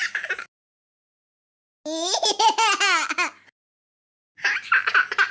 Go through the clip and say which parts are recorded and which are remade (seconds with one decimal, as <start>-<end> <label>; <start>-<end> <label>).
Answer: 0.0-5.3 recorded